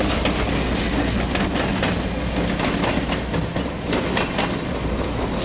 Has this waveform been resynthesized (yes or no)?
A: no